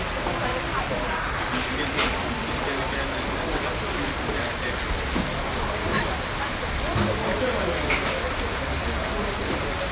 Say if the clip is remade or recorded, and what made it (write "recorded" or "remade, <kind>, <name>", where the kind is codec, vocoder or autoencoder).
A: recorded